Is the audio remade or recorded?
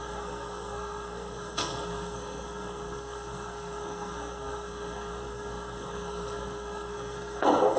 remade